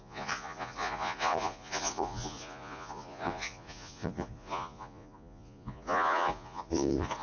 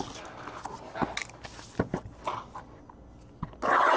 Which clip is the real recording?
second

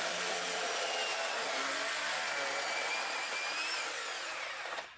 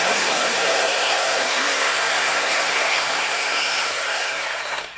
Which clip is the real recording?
first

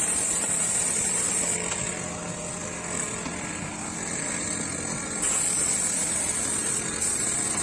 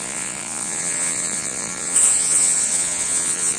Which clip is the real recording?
first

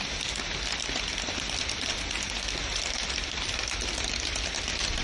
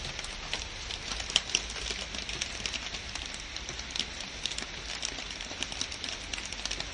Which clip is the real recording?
second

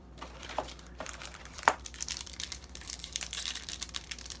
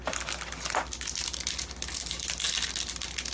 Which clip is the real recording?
second